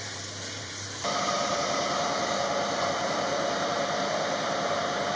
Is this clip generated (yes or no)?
yes